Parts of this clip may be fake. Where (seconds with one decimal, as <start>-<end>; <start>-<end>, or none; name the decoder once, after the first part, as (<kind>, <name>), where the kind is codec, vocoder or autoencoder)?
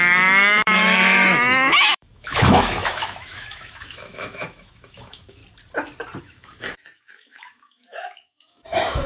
0.0-5.4 (autoencoder, DAC-VAE); 6.2-9.1